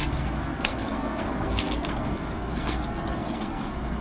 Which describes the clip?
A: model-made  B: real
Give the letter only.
A